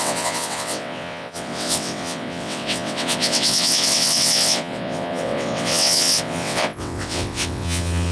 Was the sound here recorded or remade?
remade